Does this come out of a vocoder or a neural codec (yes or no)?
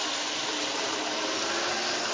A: no